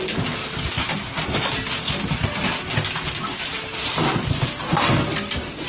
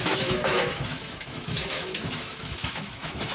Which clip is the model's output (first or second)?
second